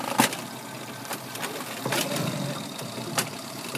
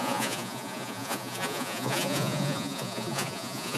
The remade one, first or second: second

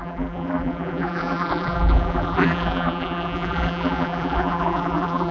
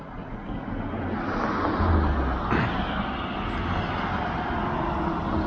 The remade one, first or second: first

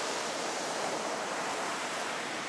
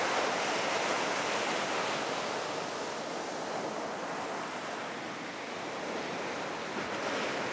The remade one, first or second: first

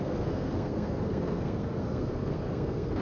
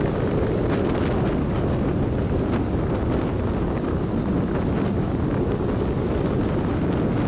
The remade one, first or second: first